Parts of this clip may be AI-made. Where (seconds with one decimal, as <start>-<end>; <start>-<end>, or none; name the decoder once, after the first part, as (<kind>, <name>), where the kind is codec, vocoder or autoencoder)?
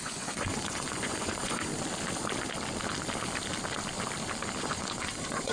0.0-1.7 (vocoder, Vocos); 4.6-5.5